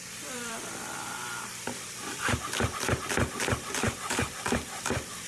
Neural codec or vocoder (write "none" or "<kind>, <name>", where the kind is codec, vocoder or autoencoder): vocoder, BigVGAN v2